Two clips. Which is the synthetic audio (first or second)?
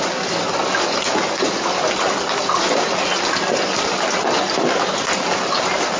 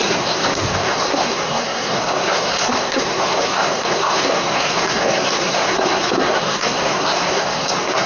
second